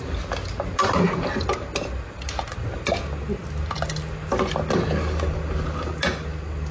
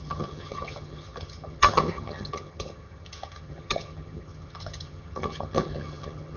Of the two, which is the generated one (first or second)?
second